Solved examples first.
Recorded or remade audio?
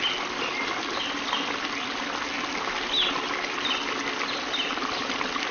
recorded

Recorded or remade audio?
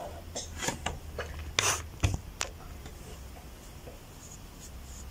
recorded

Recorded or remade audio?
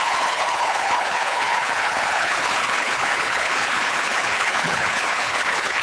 remade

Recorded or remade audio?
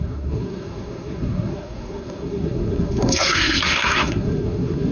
remade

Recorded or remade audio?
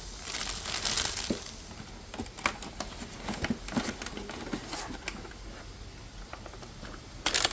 recorded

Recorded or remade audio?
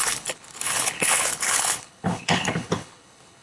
remade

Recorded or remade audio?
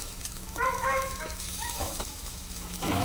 remade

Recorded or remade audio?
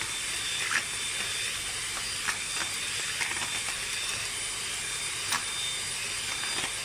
recorded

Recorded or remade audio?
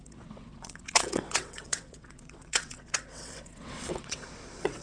remade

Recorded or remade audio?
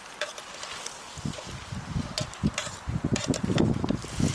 recorded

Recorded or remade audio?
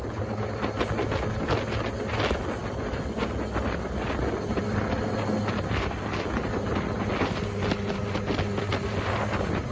recorded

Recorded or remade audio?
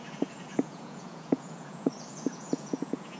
remade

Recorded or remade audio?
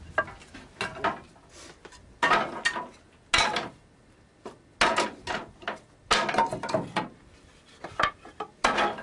recorded